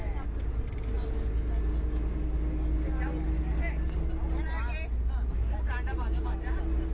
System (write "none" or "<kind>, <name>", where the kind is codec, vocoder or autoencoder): none